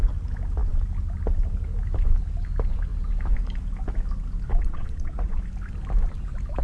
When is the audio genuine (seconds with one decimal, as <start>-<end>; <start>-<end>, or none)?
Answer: 0.0-4.5; 5.4-6.6